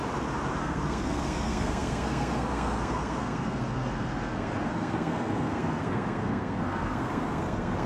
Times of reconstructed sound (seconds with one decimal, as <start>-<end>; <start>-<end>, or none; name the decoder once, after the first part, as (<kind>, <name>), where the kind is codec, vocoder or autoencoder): 0.6-7.9 (codec, SNAC)

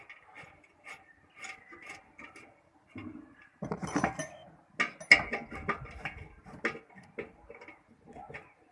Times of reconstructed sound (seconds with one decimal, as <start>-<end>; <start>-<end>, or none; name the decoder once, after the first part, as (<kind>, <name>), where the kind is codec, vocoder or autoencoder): none